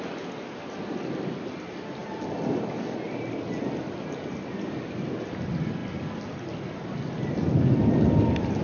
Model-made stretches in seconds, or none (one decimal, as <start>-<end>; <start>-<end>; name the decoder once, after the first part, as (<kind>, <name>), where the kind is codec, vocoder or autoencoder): none